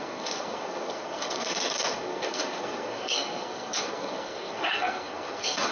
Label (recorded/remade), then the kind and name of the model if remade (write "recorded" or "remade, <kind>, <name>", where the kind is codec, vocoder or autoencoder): remade, codec, SNAC